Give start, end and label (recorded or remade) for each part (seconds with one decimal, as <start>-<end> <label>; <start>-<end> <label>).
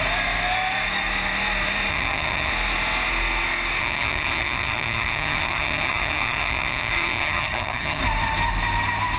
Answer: 0.0-1.9 recorded; 1.9-2.5 remade; 2.5-3.8 recorded; 3.8-8.0 remade; 8.0-9.2 recorded